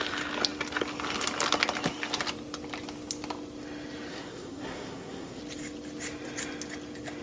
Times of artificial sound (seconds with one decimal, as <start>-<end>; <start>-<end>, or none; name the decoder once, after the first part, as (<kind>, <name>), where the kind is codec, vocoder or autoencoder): 4.1-5.4 (codec, SNAC)